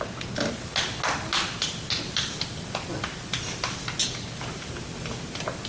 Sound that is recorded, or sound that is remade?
recorded